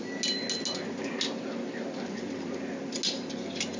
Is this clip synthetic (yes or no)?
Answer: no